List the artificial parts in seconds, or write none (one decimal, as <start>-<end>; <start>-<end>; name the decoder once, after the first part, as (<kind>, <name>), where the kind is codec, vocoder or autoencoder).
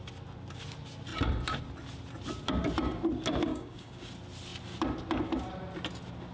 3.5-4.1 (codec, DAC)